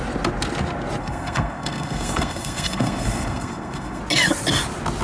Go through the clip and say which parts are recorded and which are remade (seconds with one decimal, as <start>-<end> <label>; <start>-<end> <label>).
0.0-1.0 recorded; 1.0-4.0 remade; 4.0-5.0 recorded